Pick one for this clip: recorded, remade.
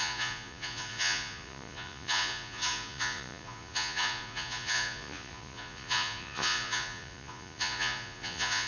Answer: remade